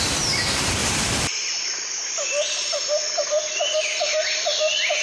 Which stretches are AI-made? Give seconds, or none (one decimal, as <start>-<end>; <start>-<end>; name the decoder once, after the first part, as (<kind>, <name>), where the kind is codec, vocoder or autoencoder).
0.8-3.8 (vocoder, BigVGAN v2)